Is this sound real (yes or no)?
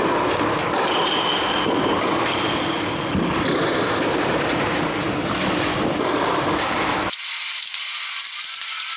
yes